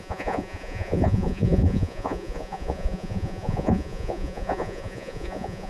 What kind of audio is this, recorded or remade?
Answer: remade